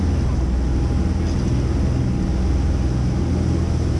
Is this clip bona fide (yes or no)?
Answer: yes